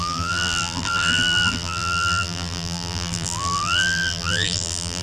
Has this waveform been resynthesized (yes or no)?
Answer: yes